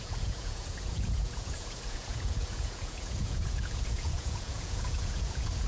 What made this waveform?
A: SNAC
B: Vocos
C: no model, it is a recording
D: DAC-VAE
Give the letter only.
B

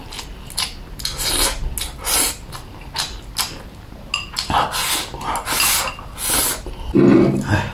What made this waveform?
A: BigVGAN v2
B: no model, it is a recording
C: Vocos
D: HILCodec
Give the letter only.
B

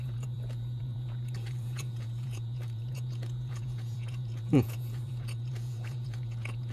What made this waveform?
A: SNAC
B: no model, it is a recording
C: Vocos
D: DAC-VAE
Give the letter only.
C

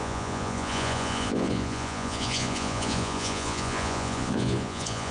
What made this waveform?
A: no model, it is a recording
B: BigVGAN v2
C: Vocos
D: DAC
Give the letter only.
C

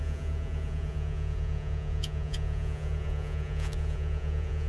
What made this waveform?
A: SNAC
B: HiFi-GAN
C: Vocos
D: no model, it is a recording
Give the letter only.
C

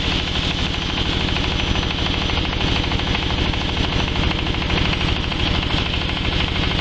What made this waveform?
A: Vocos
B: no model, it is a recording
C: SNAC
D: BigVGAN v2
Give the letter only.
B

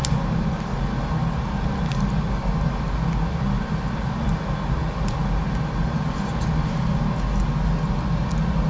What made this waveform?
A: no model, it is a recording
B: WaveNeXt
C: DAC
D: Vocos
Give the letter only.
A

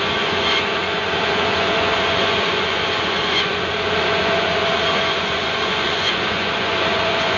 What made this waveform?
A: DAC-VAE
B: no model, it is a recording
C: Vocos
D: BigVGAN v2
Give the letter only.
C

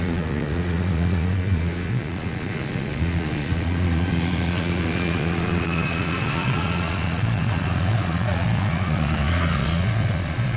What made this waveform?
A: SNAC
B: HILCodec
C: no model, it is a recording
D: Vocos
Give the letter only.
D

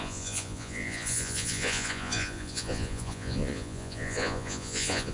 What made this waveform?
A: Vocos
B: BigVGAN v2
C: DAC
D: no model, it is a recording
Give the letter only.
A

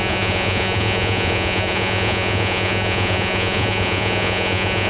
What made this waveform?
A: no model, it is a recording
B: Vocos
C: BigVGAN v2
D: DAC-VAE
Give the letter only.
B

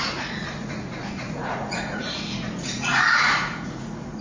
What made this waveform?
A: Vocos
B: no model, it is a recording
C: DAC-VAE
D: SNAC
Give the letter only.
A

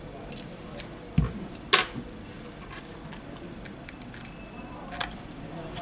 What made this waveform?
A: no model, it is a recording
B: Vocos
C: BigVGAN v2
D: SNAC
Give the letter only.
A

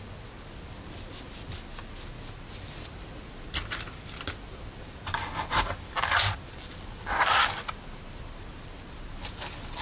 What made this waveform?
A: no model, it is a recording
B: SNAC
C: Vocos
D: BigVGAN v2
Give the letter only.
A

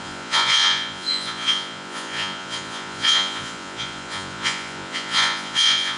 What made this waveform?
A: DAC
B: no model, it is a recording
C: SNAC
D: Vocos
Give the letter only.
D